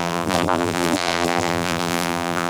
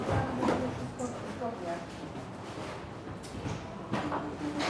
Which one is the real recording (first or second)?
second